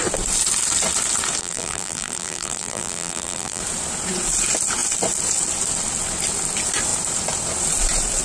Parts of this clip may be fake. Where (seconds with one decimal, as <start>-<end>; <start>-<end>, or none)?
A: 1.4-3.6